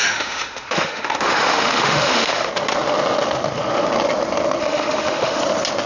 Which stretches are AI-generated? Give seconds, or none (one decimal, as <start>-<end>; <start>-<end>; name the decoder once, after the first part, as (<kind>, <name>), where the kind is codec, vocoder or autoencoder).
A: 0.0-2.5 (autoencoder, DAC-VAE); 4.6-5.4